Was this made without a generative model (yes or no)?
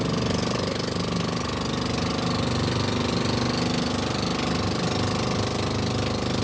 yes